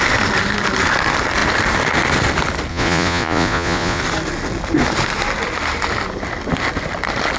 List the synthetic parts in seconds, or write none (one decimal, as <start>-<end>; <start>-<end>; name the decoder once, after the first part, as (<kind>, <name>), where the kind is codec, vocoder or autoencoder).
2.7-4.0 (vocoder, Vocos)